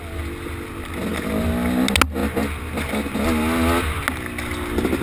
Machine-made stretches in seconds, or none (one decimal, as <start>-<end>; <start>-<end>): none